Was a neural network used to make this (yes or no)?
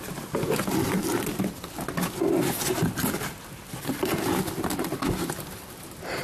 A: no